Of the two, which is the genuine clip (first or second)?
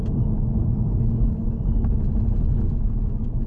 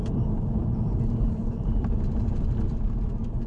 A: first